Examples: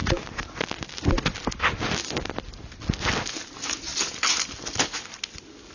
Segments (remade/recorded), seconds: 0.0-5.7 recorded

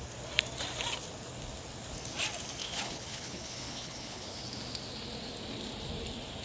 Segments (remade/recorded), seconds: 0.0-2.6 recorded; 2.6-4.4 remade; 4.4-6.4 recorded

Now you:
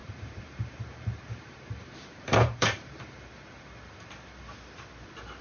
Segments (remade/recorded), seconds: 0.0-3.2 remade; 3.2-5.4 recorded

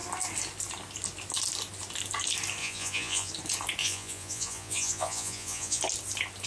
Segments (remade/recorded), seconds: 0.0-2.6 recorded; 2.6-3.3 remade; 3.3-3.8 recorded; 3.8-5.8 remade; 5.8-6.5 recorded

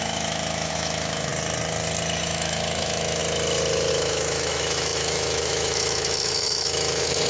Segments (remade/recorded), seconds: 0.0-1.3 remade; 1.3-2.2 recorded; 2.2-3.2 remade; 3.2-3.9 recorded; 3.9-7.3 remade